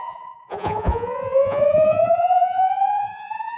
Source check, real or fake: fake